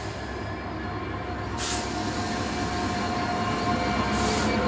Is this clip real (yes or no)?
yes